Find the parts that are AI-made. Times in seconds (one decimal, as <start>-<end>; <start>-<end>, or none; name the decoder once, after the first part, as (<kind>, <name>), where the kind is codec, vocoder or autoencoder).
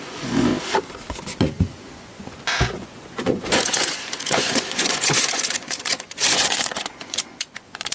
0.0-0.5 (vocoder, Vocos); 1.2-7.9